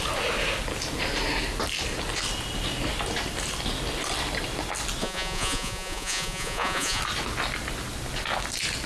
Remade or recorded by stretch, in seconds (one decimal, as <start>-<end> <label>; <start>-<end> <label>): 0.0-5.0 recorded; 5.0-7.0 remade; 7.0-8.9 recorded